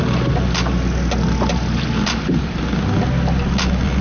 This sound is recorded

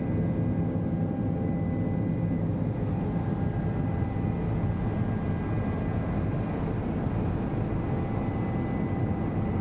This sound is recorded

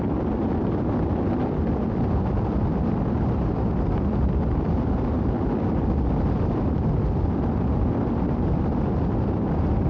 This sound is recorded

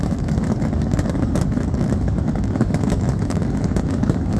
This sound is remade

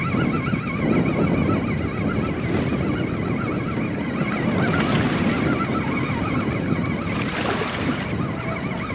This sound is recorded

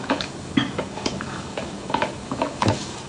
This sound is remade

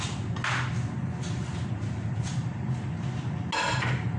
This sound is recorded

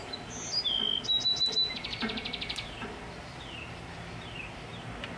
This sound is recorded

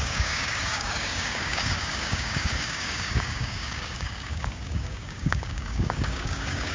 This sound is remade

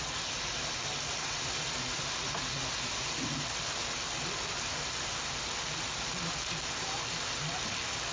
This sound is recorded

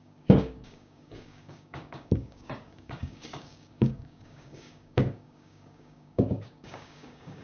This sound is remade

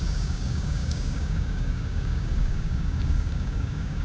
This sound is remade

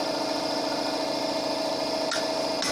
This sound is recorded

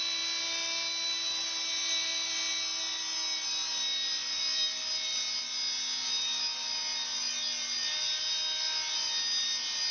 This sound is recorded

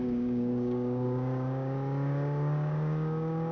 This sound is remade